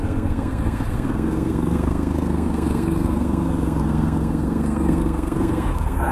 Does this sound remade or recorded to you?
remade